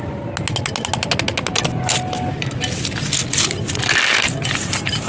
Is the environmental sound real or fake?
real